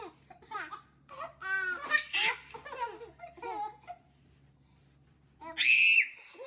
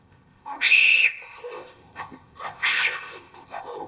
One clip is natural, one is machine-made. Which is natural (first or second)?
first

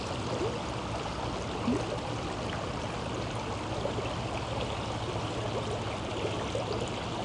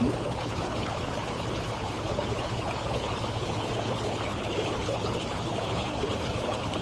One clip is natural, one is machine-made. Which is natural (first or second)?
first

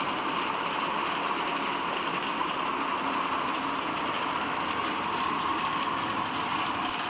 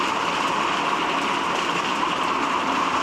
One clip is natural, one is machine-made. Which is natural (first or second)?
first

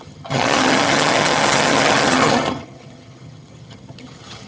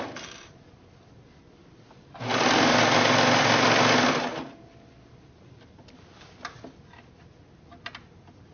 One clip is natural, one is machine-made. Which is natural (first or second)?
second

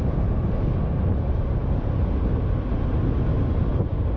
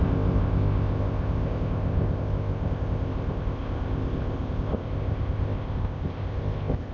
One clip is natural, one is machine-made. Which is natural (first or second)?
first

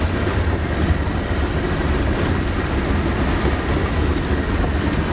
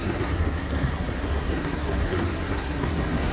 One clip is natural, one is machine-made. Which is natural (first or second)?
first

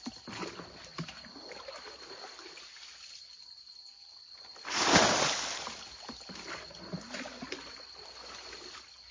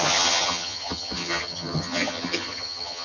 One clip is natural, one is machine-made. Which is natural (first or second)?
first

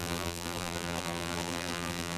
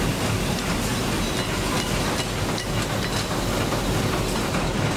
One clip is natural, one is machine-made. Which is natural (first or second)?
second